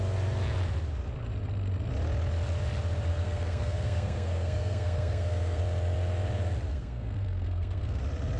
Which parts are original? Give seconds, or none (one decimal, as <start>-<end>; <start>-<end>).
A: 0.0-3.1; 5.6-6.7; 8.0-8.4